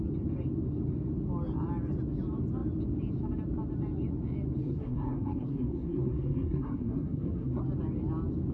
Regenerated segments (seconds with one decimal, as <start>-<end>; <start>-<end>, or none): 4.6-7.6